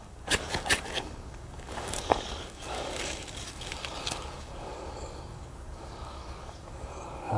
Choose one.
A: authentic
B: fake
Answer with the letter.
B